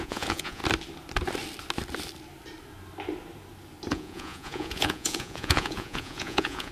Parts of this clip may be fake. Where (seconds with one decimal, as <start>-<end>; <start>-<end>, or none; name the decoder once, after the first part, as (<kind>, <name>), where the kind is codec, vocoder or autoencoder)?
0.0-0.6 (vocoder, Vocos); 3.9-6.7